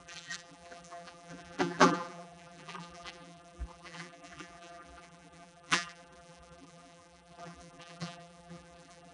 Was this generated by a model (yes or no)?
yes